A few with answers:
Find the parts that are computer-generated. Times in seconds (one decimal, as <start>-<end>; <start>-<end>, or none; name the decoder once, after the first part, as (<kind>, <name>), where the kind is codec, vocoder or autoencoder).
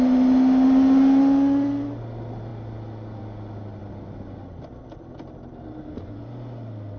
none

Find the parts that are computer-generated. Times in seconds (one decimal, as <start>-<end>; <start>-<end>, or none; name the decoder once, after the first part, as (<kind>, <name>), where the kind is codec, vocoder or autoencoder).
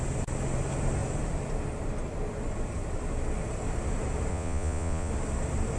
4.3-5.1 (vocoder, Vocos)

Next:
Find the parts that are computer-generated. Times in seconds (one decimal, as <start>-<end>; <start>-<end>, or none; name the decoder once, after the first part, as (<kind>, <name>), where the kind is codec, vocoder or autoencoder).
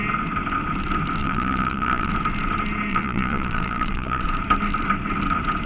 1.2-2.1 (vocoder, Vocos); 2.9-4.3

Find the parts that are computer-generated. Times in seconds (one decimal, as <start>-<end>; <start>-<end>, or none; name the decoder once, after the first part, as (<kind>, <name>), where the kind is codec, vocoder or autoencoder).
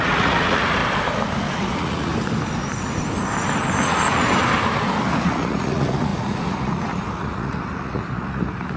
0.0-0.8 (vocoder, Vocos); 1.5-2.1; 3.8-4.4; 5.1-8.8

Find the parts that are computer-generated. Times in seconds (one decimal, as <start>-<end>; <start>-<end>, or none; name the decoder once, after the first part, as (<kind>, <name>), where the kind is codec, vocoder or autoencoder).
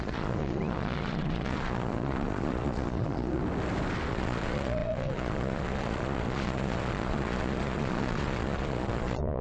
0.0-3.4 (vocoder, Vocos); 4.1-9.4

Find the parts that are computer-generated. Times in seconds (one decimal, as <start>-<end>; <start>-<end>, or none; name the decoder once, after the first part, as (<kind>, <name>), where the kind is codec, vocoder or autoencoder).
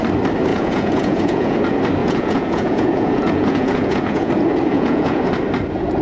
0.5-1.6 (vocoder, Vocos); 2.0-4.3; 4.7-5.3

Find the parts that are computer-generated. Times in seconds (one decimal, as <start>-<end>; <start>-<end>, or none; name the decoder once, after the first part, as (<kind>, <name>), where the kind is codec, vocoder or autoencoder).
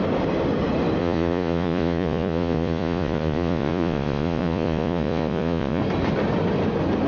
1.0-5.8 (vocoder, Vocos)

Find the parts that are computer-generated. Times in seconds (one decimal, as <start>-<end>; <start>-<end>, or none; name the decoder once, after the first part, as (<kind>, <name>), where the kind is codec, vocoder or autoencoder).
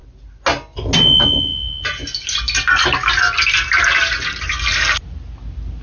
none